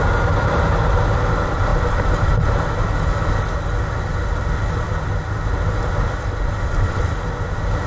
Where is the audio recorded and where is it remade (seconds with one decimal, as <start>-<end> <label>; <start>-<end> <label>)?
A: 0.0-7.9 recorded